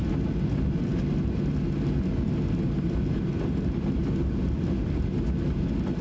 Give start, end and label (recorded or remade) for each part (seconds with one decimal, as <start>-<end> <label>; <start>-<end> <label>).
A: 0.0-6.0 recorded